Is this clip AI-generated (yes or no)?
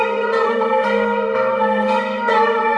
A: yes